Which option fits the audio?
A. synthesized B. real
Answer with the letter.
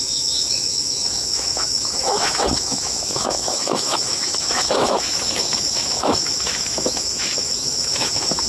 A